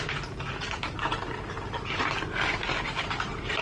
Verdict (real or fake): real